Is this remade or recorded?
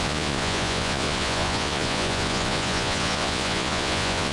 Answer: remade